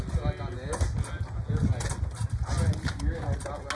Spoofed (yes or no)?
no